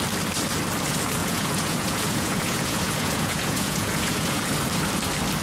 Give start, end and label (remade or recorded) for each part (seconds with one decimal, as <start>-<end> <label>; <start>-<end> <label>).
0.0-1.2 recorded; 1.2-4.4 remade; 4.4-5.4 recorded